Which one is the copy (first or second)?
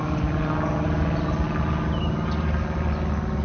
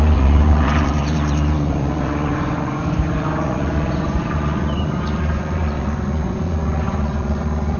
second